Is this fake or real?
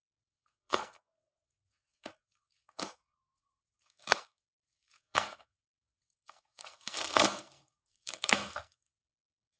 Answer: fake